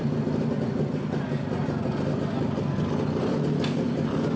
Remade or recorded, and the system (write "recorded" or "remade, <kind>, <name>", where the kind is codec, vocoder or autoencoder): recorded